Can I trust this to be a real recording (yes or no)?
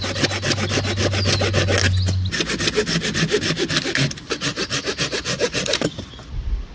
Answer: yes